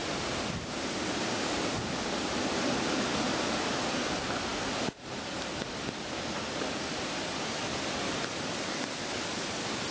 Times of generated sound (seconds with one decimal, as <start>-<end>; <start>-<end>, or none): none